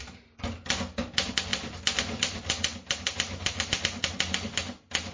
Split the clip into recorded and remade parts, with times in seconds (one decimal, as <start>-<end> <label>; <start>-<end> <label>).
0.0-5.1 recorded